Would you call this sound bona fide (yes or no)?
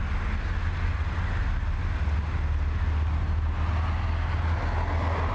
yes